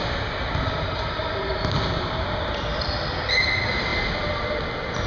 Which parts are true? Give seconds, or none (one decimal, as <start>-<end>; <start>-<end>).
0.0-5.1